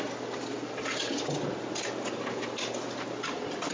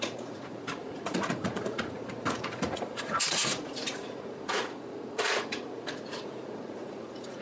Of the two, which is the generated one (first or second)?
second